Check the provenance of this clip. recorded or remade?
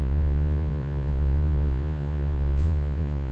remade